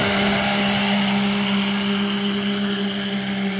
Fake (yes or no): no